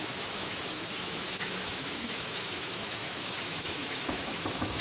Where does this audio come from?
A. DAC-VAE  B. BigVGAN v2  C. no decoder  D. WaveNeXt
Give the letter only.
A